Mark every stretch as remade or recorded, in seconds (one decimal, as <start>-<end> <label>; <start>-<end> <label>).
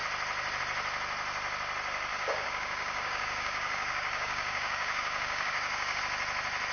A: 0.0-2.1 recorded; 2.1-6.0 remade; 6.0-6.7 recorded